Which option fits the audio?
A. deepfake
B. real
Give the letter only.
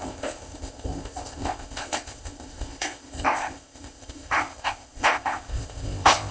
A